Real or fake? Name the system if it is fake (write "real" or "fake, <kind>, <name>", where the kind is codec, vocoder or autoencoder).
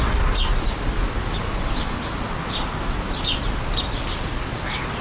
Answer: real